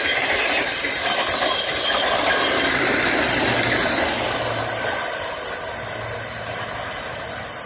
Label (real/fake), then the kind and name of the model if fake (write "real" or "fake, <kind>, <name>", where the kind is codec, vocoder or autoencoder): real